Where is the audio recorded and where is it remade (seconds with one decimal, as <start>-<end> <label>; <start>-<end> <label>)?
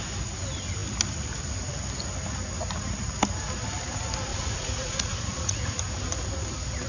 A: 0.0-4.3 recorded; 4.3-5.8 remade; 5.8-6.9 recorded